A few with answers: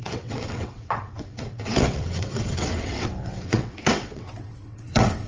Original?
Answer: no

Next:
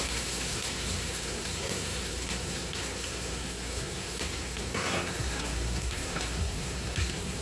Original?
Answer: no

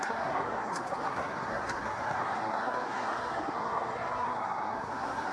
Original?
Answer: no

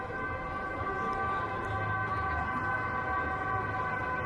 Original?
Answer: yes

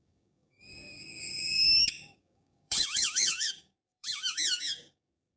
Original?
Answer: no